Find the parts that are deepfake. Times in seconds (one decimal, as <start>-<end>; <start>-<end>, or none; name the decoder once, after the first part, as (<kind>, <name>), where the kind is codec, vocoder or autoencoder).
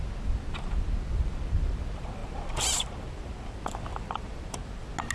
none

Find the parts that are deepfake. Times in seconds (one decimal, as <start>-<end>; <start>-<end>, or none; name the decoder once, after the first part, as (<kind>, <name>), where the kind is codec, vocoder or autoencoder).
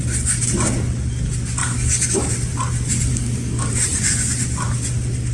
1.6-2.3 (codec, DAC); 3.1-3.7